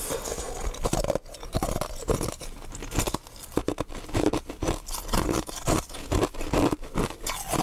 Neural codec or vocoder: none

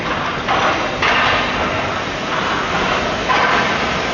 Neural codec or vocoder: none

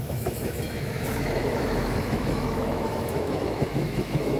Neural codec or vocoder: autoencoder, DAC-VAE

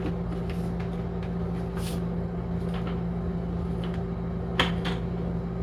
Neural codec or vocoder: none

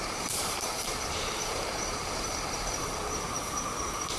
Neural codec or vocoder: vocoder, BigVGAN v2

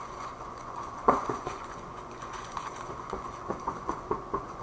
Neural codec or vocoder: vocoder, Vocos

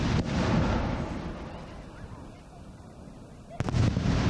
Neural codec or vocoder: none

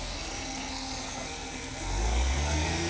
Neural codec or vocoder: codec, SNAC